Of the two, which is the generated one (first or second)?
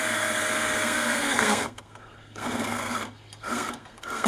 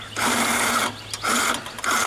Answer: first